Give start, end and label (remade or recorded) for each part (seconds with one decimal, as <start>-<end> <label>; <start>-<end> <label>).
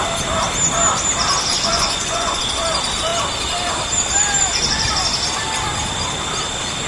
0.0-1.5 recorded; 1.5-2.4 remade; 2.4-6.9 recorded